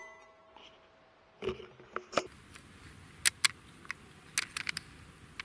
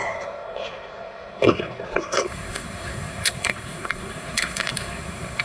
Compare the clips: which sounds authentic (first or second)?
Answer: first